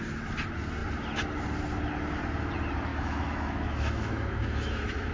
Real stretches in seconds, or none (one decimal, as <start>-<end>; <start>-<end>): 0.0-2.9